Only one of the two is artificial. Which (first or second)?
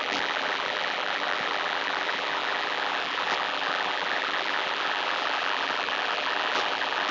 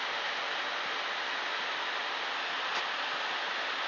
first